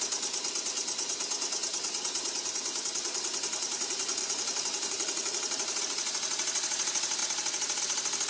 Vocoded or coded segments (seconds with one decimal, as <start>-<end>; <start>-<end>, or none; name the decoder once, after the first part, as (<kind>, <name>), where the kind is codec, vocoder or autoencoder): 4.2-5.8 (vocoder, BigVGAN v2)